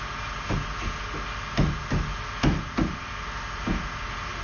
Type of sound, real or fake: real